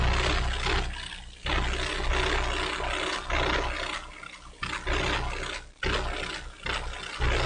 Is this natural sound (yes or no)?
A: yes